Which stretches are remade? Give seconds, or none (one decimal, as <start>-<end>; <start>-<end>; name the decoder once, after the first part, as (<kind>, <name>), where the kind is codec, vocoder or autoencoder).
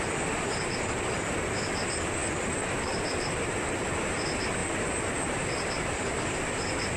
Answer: none